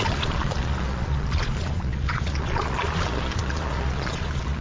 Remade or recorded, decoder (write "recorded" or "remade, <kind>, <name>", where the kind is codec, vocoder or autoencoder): remade, vocoder, Vocos